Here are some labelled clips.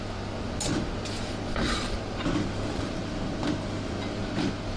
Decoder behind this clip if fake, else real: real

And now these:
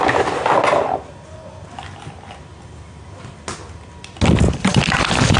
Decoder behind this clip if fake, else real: real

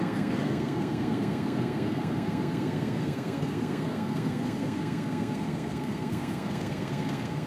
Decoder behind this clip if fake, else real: fake, codec, SNAC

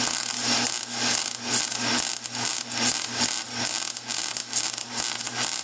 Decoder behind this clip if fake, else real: real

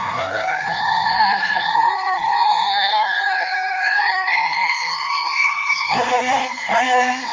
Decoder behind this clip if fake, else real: fake, codec, SNAC